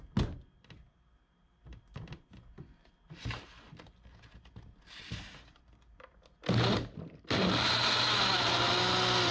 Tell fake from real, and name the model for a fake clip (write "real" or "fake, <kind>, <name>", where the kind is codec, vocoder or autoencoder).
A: real